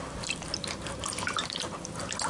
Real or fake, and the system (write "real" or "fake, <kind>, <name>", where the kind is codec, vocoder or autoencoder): real